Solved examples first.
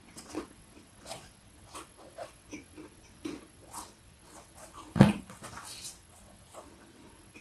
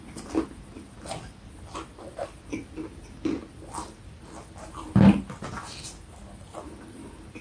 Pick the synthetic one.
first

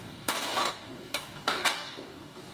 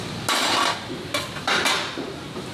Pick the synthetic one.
first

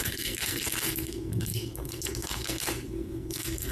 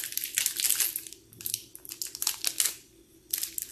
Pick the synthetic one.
first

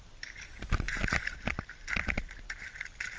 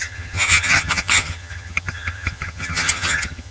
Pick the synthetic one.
second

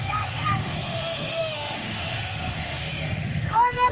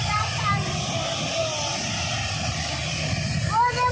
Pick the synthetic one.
first